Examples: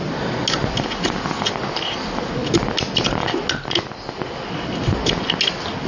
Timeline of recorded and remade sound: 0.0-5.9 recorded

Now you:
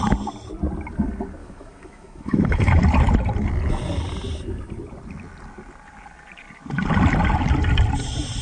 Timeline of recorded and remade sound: 0.0-1.4 recorded; 1.4-2.8 remade; 2.8-8.4 recorded

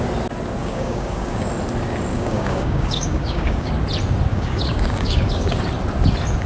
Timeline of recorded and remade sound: 0.0-0.6 recorded; 0.6-1.5 remade; 1.5-2.1 recorded; 2.1-3.7 remade; 3.7-4.3 recorded; 4.3-5.6 remade; 5.6-6.5 recorded

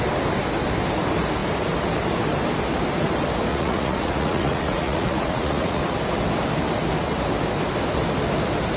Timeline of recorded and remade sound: 0.0-3.5 recorded; 3.5-5.8 remade; 5.8-8.8 recorded

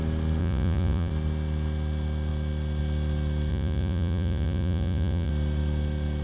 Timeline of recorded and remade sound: 0.0-0.4 recorded; 0.4-1.1 remade; 1.1-3.5 recorded; 3.5-5.3 remade; 5.3-6.2 recorded

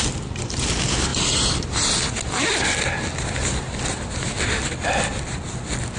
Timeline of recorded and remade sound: 0.0-6.0 recorded

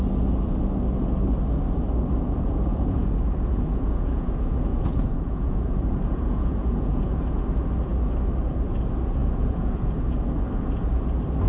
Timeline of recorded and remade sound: 0.0-2.7 recorded; 2.7-7.1 remade; 7.1-9.2 recorded; 9.2-10.0 remade; 10.0-11.5 recorded

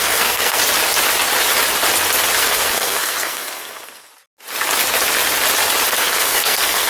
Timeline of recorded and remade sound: 0.0-0.6 remade; 0.6-2.4 recorded; 2.4-4.1 remade; 4.1-5.9 recorded; 5.9-6.9 remade